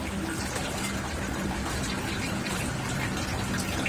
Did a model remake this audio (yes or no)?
no